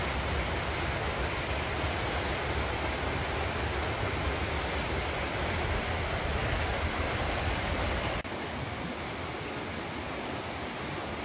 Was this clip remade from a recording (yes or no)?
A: no